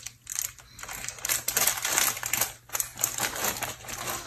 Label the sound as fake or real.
real